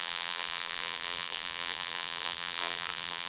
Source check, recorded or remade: remade